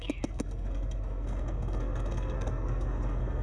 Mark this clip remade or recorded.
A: remade